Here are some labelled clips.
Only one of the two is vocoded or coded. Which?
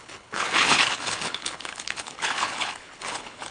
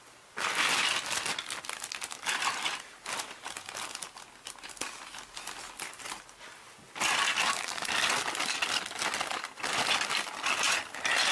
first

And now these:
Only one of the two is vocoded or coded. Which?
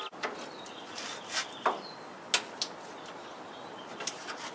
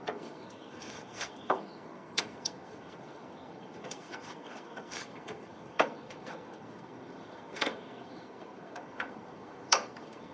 second